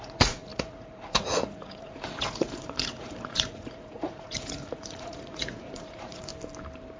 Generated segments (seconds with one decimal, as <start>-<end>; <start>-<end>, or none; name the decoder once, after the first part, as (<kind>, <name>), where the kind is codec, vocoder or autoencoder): 0.0-6.3 (vocoder, Vocos)

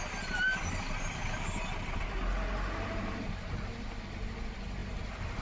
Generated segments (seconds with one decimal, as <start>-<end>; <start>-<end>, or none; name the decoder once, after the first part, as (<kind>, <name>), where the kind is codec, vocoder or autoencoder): none